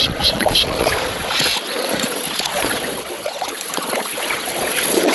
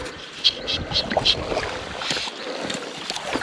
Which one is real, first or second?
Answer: second